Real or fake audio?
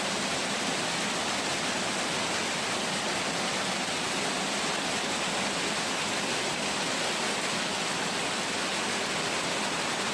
real